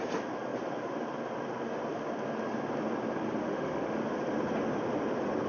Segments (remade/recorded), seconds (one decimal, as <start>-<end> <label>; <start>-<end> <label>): 0.0-3.4 recorded; 3.4-4.0 remade; 4.0-5.5 recorded